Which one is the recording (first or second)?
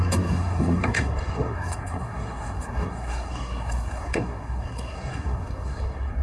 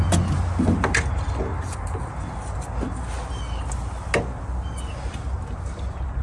second